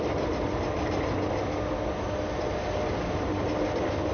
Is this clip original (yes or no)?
yes